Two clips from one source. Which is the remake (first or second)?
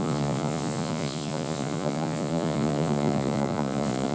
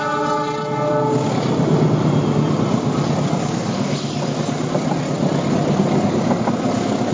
first